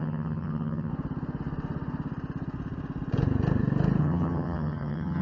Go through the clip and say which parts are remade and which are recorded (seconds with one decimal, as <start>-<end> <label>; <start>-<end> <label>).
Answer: 0.0-0.9 remade; 0.9-4.0 recorded; 4.0-5.2 remade